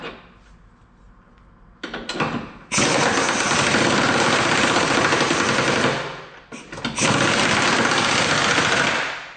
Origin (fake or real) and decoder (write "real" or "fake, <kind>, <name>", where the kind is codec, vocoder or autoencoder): real